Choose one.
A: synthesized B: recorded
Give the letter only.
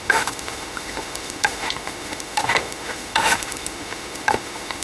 A